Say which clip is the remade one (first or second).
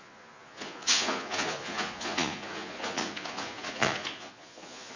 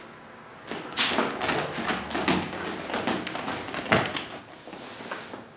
first